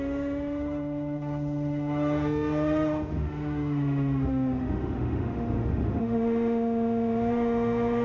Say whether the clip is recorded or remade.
remade